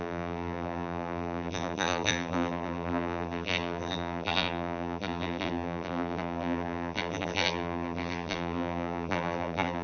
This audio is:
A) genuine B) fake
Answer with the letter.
B